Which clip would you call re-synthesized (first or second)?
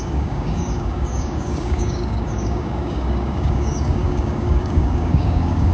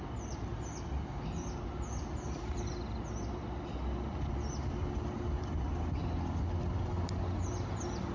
first